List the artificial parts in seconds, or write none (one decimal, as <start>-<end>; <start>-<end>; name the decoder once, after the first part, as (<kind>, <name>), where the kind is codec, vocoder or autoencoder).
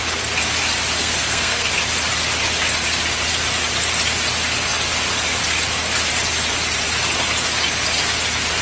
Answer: 1.0-1.7 (codec, SNAC)